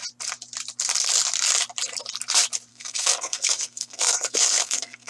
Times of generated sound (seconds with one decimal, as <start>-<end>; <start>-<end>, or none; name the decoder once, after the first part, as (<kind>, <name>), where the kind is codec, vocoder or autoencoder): 2.7-5.1 (codec, SNAC)